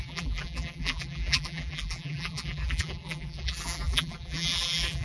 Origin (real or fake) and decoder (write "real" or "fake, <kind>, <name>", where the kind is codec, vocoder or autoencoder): fake, vocoder, BigVGAN v2